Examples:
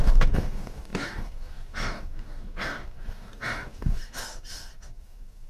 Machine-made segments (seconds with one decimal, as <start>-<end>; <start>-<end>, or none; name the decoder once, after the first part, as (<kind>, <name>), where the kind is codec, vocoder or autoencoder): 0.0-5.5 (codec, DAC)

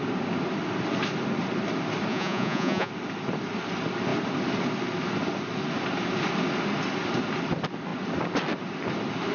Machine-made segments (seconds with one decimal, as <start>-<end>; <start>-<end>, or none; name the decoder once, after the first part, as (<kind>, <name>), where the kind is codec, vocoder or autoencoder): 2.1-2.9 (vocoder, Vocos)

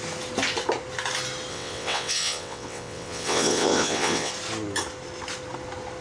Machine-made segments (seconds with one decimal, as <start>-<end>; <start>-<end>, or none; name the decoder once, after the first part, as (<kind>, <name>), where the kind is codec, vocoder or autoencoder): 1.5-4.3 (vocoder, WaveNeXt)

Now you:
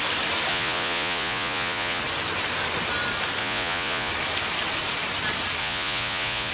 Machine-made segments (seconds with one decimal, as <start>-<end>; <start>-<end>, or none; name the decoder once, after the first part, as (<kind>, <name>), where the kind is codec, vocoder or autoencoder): 0.5-2.0 (vocoder, Vocos); 3.4-4.1; 5.6-6.5

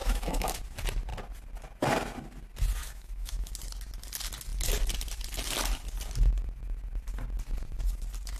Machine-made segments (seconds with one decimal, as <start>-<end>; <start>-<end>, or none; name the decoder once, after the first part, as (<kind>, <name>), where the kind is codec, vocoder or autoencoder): 0.0-0.6 (autoencoder, DAC-VAE); 2.8-3.5